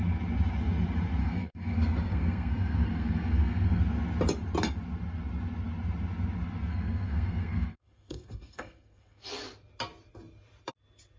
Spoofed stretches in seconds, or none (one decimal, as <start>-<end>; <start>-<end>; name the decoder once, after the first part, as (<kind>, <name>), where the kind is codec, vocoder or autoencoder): 1.2-3.8 (codec, SNAC); 6.7-9.2